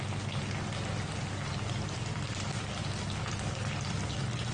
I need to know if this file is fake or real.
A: fake